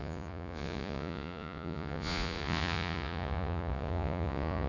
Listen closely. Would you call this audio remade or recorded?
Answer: remade